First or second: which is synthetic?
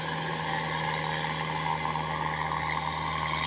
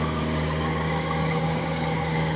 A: second